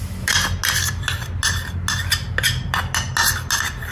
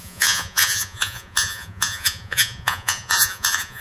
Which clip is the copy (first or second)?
second